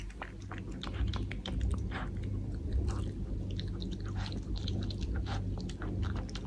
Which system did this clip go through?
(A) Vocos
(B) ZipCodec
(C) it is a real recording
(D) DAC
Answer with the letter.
C